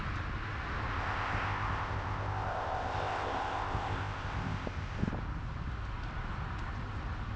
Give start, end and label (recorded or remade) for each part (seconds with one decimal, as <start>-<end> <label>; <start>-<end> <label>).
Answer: 0.0-0.9 recorded; 0.9-5.1 remade; 5.1-7.4 recorded